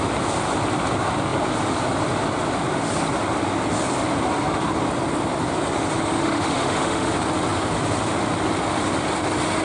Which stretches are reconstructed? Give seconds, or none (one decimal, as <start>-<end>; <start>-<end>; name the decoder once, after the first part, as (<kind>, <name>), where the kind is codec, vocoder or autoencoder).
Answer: 6.2-7.1 (autoencoder, DAC-VAE)